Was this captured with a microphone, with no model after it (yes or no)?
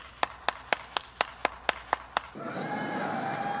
yes